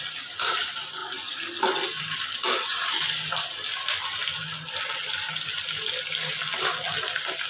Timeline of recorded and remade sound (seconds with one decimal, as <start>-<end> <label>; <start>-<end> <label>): 0.0-7.5 recorded